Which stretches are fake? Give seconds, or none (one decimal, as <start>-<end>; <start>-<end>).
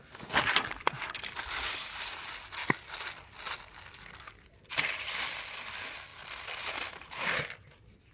6.1-6.7